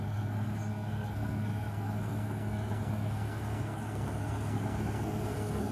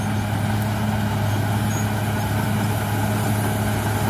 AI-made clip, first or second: first